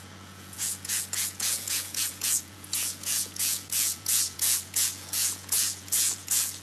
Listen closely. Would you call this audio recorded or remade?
remade